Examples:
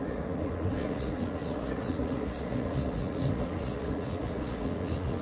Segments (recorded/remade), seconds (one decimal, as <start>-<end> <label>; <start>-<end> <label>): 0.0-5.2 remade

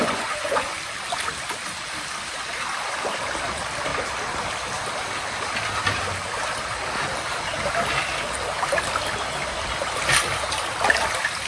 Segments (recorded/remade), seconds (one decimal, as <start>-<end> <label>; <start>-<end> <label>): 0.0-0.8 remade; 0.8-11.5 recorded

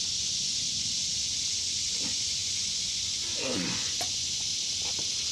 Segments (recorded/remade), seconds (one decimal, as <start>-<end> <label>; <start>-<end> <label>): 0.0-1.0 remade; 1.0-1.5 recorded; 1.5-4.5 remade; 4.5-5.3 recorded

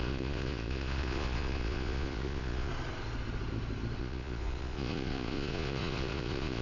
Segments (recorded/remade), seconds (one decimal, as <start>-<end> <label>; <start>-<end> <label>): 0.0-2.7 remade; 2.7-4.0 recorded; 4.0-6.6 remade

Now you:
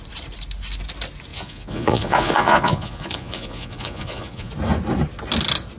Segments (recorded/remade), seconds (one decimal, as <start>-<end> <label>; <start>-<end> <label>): 0.0-1.3 recorded; 1.3-4.5 remade; 4.5-5.8 recorded

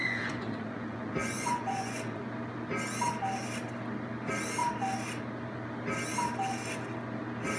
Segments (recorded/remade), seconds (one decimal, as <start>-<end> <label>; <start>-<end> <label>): 0.0-2.2 remade; 2.2-7.6 recorded